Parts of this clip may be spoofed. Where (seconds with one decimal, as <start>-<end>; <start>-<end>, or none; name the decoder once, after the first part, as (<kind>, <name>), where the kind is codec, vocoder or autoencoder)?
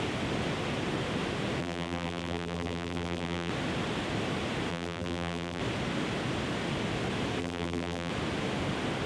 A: 1.6-3.5 (vocoder, BigVGAN v2); 4.7-5.6; 7.4-8.1